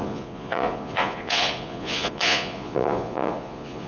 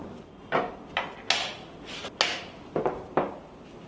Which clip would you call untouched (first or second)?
second